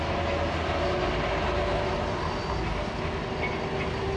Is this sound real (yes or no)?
yes